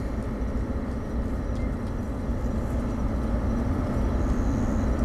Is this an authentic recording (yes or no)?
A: yes